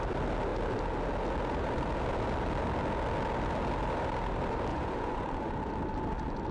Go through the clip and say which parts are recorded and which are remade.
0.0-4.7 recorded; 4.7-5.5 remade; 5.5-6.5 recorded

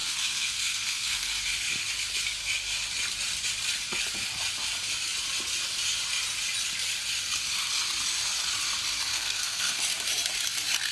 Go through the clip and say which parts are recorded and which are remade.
0.0-1.3 remade; 1.3-9.1 recorded; 9.1-9.8 remade; 9.8-10.9 recorded